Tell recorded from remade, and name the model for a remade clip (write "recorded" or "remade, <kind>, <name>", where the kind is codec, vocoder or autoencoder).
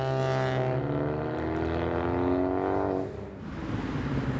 recorded